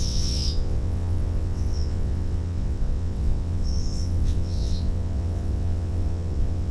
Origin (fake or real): fake